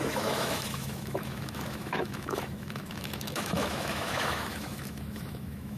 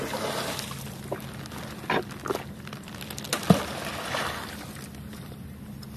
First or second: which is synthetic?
first